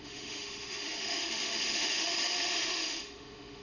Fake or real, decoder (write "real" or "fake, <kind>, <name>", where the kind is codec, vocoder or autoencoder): fake, autoencoder, DAC-VAE